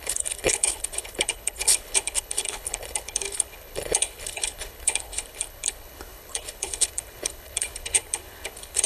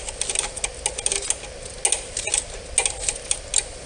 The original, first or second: second